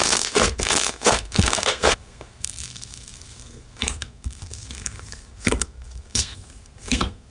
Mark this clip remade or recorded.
remade